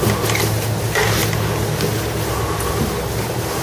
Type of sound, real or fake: real